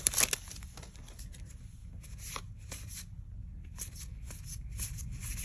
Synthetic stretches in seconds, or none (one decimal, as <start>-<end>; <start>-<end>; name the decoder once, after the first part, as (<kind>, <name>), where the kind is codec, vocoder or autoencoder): 0.0-1.8 (vocoder, BigVGAN v2); 5.0-5.4

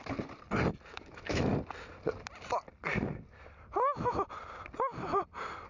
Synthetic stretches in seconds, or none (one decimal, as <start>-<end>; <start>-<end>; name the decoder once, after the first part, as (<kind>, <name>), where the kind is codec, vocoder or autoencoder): 0.9-1.5 (autoencoder, DAC-VAE)